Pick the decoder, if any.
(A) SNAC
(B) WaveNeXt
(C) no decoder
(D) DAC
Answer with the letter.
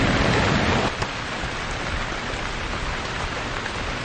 C